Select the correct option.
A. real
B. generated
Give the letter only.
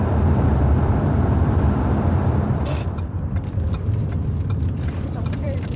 B